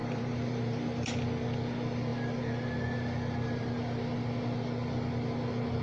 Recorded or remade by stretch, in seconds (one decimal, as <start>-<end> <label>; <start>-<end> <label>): 0.0-1.1 remade; 1.1-5.8 recorded